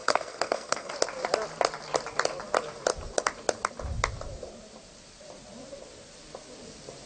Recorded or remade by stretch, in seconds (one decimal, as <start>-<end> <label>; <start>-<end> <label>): 0.0-0.9 remade; 0.9-7.1 recorded